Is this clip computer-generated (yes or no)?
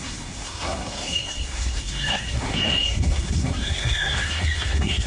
yes